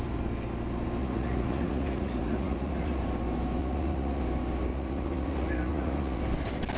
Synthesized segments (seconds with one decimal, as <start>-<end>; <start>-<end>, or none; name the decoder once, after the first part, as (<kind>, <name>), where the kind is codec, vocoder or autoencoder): 1.0-3.0 (vocoder, Vocos); 3.6-4.2; 4.7-6.2